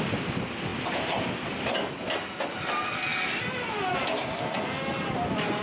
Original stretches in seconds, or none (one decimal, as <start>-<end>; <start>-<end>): 0.0-5.6